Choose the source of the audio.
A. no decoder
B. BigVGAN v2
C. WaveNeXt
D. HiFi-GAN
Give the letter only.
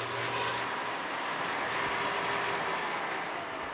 A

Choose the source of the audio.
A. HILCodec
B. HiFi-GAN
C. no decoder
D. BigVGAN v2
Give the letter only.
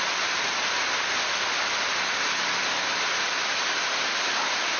C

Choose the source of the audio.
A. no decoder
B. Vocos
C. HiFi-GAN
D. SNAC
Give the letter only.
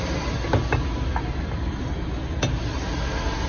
A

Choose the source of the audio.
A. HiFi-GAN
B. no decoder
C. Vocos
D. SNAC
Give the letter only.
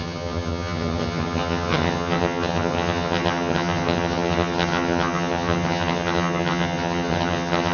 A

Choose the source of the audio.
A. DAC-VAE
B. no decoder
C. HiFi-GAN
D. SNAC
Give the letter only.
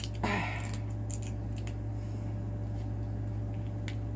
B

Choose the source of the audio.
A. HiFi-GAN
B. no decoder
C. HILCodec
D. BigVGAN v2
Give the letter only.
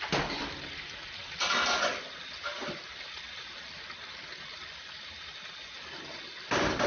B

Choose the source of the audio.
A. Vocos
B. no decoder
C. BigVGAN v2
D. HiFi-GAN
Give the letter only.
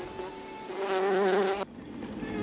B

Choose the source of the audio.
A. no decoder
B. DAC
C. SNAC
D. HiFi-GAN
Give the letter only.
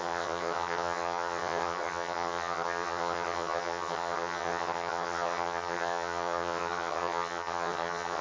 D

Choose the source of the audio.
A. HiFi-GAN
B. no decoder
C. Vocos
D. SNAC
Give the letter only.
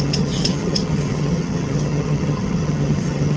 A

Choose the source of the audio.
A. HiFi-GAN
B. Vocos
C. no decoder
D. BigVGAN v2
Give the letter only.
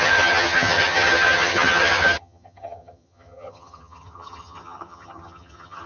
A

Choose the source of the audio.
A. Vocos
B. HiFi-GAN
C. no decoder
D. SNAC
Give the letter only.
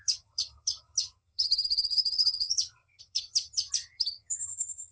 B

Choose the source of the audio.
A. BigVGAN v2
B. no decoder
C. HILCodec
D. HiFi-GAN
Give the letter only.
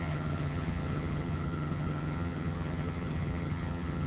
D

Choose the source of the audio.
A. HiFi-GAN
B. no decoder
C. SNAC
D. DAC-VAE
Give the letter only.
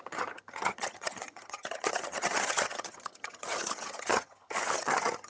A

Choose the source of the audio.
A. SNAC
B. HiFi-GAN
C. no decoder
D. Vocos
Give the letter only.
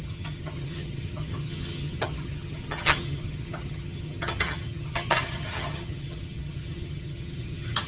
B